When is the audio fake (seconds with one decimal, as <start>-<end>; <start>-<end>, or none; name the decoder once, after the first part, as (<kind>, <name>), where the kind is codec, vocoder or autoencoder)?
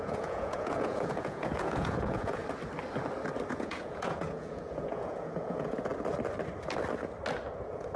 0.0-2.4 (vocoder, Vocos); 3.5-5.9; 7.5-8.0